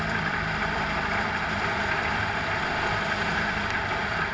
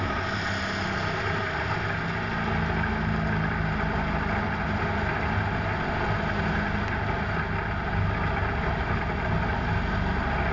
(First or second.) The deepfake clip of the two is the first